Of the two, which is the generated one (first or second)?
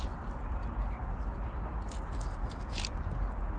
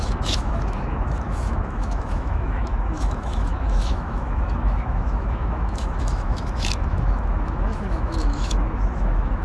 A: second